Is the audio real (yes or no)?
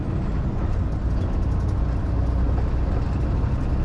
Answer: yes